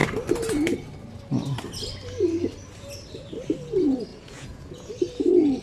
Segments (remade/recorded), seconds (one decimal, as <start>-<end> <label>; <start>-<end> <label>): 0.0-4.1 recorded; 4.1-4.9 remade; 4.9-5.6 recorded